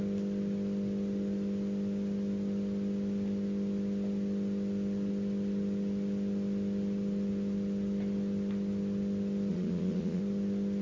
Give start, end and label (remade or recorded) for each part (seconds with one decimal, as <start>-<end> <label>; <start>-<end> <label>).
0.0-9.5 recorded; 9.5-10.2 remade; 10.2-10.8 recorded